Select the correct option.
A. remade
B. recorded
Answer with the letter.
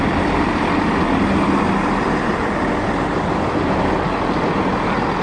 B